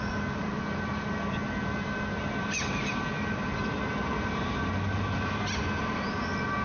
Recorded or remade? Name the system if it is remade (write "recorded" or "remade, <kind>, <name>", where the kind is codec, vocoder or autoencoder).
recorded